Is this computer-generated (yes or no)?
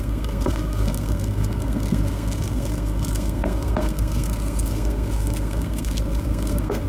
yes